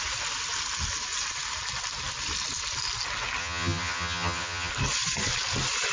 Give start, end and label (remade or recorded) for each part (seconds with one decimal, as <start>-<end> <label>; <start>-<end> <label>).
0.0-3.4 recorded; 3.4-4.7 remade; 4.7-5.9 recorded